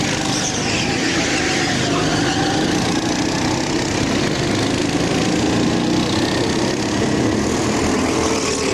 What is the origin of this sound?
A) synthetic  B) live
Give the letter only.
B